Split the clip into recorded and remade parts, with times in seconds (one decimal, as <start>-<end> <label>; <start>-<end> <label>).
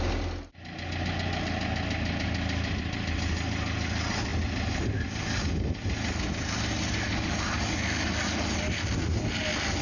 0.0-9.8 recorded